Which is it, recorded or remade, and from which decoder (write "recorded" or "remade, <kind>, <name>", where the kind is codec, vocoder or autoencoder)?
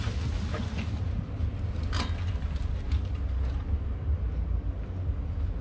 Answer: recorded